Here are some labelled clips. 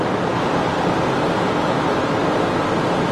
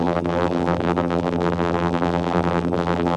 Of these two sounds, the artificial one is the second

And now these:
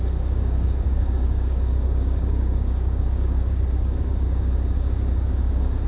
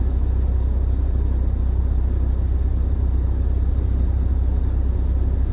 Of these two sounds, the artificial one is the first